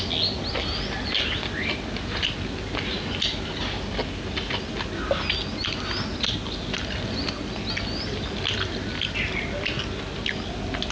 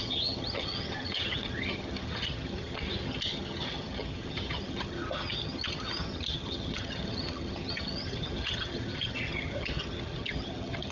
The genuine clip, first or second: first